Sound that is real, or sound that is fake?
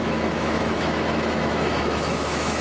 fake